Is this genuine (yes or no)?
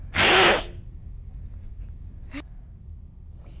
yes